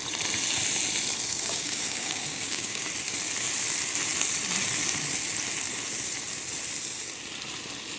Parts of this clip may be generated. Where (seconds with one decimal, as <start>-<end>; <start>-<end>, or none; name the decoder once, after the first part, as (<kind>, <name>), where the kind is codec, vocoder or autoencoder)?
1.3-2.9 (codec, DAC)